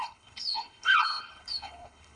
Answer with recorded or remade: remade